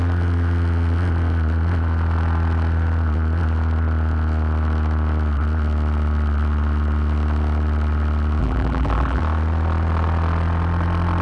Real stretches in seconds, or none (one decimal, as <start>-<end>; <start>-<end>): 0.0-8.4; 9.2-11.2